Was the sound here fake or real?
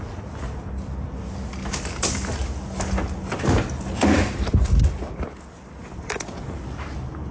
real